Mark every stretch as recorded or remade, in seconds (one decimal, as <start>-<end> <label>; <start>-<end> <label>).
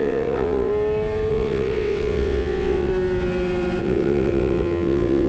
0.0-0.7 remade; 0.7-1.3 recorded; 1.3-2.9 remade; 2.9-3.8 recorded; 3.8-5.3 remade